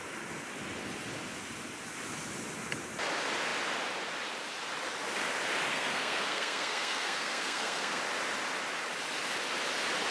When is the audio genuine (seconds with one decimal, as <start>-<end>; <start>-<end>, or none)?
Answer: 0.0-5.7; 8.0-10.1